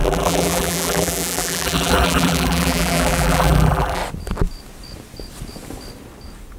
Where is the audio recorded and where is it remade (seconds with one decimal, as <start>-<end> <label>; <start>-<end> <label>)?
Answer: 0.0-4.0 remade; 4.0-6.6 recorded